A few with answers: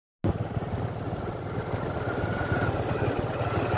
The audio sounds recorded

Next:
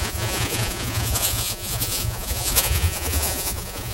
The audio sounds remade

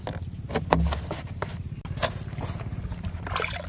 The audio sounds recorded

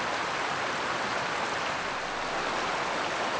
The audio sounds recorded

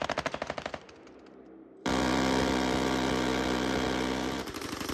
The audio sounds remade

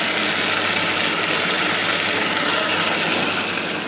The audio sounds recorded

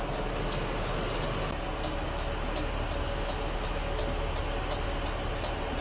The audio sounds recorded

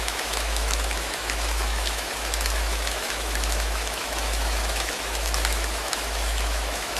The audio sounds remade